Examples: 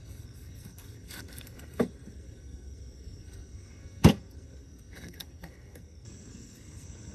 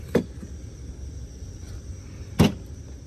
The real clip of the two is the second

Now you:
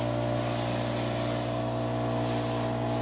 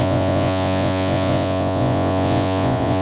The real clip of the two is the first